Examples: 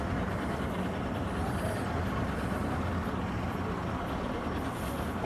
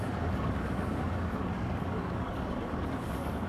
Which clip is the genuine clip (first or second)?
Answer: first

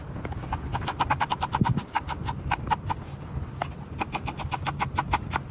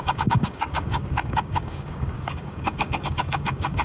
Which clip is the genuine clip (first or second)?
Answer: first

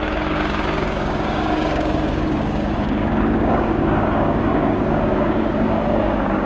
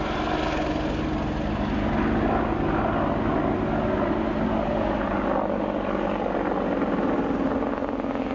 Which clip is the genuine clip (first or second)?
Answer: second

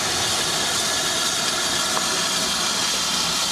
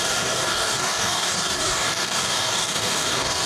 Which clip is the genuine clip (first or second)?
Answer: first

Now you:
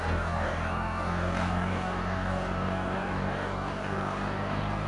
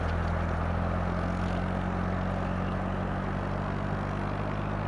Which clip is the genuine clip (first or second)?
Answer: second